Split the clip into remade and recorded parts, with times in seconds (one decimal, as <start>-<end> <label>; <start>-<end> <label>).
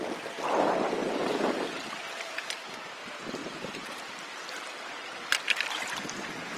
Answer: 0.0-1.0 recorded; 1.0-3.0 remade; 3.0-3.4 recorded; 3.4-5.4 remade; 5.4-6.6 recorded